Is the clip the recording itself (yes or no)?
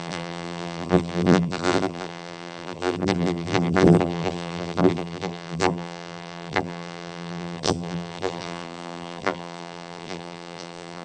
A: no